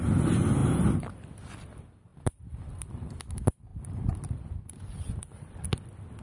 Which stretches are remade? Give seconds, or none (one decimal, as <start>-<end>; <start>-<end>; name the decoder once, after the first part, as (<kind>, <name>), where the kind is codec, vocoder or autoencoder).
2.1-3.2 (vocoder, BigVGAN v2); 3.7-5.5